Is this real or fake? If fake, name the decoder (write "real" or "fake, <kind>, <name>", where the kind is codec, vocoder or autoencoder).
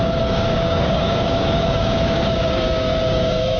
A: fake, codec, DAC